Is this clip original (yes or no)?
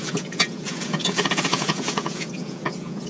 no